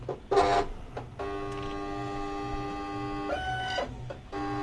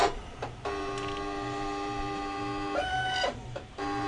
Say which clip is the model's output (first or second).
second